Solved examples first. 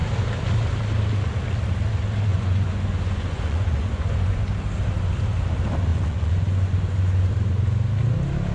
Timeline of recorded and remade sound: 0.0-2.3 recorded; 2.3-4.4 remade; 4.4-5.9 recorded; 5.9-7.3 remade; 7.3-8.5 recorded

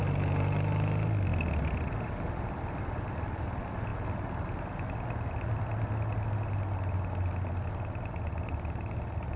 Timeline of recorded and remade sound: 0.0-9.4 recorded

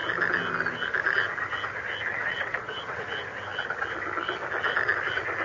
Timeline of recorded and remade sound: 0.0-2.1 recorded; 2.1-3.0 remade; 3.0-5.4 recorded

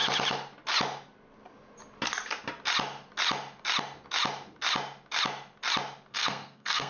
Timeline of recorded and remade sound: 0.0-6.1 recorded; 6.1-6.9 remade

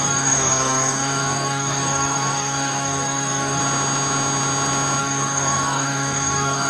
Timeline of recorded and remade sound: 0.0-3.6 remade; 3.6-5.0 recorded; 5.0-6.7 remade

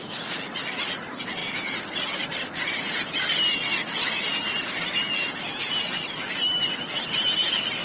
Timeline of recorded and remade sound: 0.0-7.8 recorded